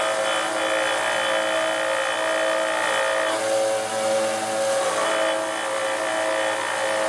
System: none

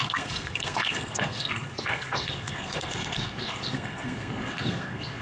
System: codec, SNAC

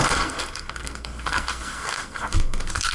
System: codec, SNAC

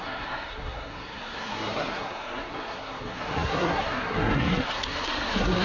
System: codec, SNAC